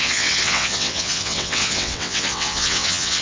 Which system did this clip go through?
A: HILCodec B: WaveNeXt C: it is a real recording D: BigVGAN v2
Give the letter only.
B